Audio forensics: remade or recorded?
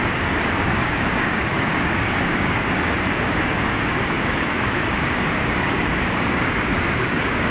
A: remade